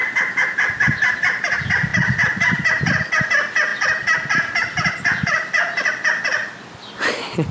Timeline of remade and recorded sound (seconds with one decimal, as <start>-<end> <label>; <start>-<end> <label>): 0.0-7.5 recorded